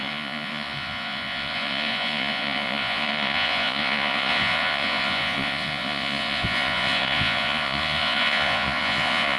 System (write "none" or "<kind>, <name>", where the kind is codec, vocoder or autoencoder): vocoder, Vocos